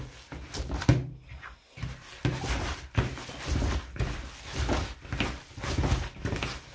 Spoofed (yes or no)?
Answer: no